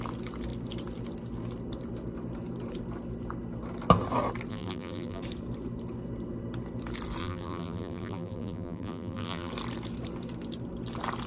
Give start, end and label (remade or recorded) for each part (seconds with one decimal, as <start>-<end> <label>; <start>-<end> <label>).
0.0-4.5 recorded; 4.5-5.2 remade; 5.2-7.2 recorded; 7.2-9.5 remade; 9.5-11.3 recorded